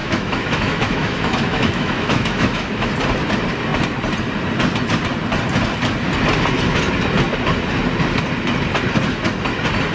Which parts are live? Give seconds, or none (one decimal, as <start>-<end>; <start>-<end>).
2.9-9.9